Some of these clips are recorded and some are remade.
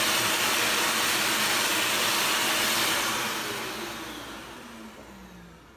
recorded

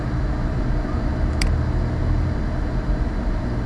remade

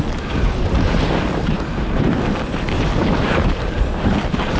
recorded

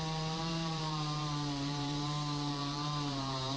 remade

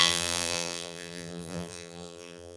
remade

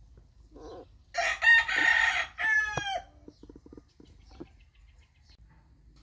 recorded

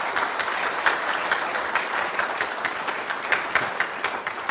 recorded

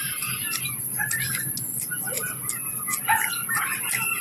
recorded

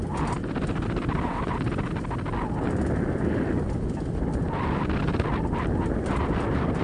recorded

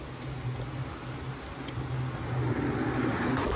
recorded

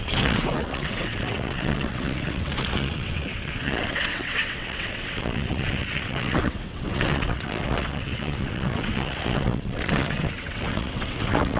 remade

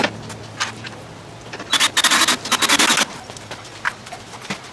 recorded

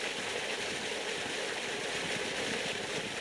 recorded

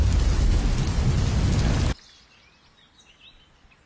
recorded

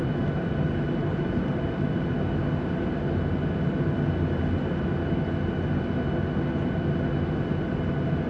recorded